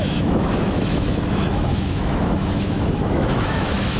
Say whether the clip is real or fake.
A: fake